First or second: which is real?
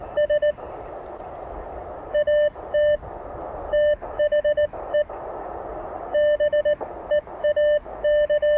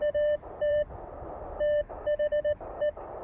first